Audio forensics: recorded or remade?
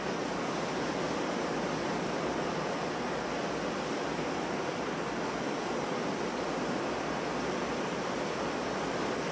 recorded